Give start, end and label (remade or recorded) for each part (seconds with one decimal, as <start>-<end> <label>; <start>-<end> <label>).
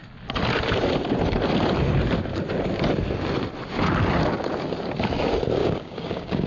0.0-5.6 recorded; 5.6-6.5 remade